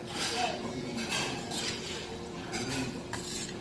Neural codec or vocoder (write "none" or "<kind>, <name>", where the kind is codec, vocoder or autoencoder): vocoder, Vocos